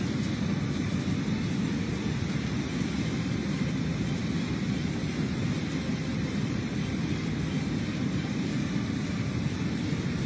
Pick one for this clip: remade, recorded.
remade